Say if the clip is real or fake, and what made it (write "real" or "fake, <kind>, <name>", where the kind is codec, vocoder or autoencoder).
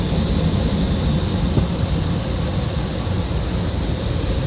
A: real